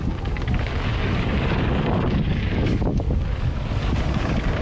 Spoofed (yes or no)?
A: yes